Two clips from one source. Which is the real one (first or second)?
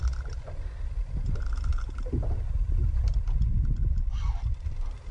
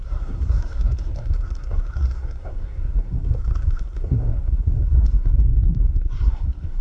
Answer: first